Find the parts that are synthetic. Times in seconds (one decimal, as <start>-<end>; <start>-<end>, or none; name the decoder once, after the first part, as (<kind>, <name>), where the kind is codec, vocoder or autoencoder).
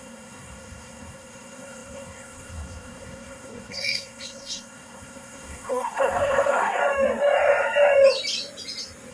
0.0-6.8 (codec, SNAC)